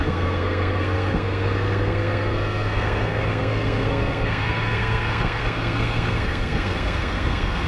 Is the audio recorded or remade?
remade